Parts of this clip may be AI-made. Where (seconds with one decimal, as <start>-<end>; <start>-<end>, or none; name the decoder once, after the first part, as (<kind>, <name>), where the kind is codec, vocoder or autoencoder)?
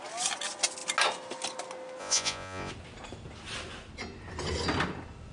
2.0-2.7 (vocoder, Vocos)